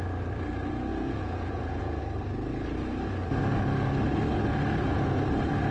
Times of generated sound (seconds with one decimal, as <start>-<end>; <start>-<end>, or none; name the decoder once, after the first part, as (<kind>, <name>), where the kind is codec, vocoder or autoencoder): 0.9-2.0 (vocoder, Vocos)